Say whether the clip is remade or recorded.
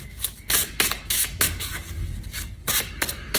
remade